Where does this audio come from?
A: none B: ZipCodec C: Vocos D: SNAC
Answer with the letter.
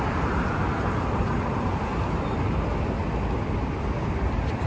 A